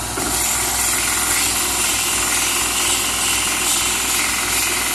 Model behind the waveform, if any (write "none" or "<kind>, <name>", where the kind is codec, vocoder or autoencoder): none